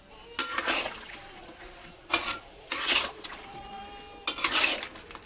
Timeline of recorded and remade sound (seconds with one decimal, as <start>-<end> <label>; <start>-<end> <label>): 0.0-0.6 recorded; 0.6-3.8 remade; 3.8-5.3 recorded